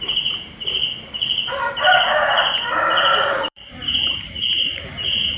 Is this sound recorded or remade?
remade